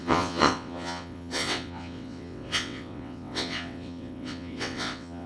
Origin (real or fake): fake